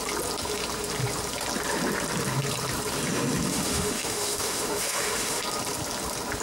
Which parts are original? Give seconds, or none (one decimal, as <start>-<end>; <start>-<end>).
0.0-3.5; 5.4-6.4